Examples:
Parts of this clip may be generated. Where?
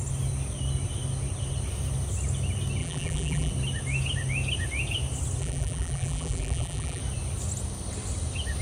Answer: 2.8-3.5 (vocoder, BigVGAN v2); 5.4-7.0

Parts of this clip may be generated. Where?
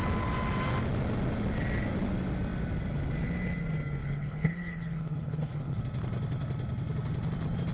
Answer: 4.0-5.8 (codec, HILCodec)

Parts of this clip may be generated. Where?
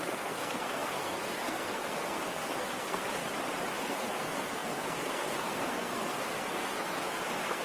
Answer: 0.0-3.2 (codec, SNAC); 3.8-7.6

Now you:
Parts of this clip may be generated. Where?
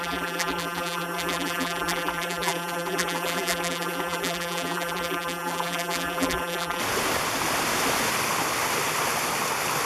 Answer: 0.0-6.8 (vocoder, BigVGAN v2)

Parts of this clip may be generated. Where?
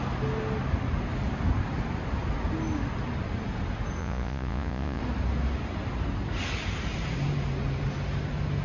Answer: 4.0-5.0 (vocoder, Vocos)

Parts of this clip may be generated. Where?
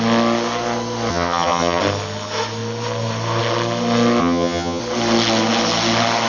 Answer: 1.1-1.8 (vocoder, HiFi-GAN); 4.2-4.8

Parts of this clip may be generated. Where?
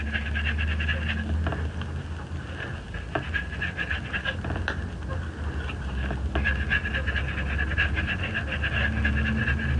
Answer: none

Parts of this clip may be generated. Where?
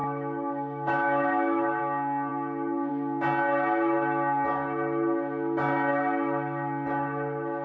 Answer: 0.0-1.8 (autoencoder, DAC-VAE)